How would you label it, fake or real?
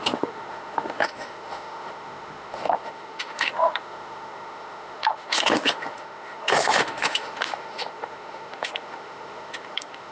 fake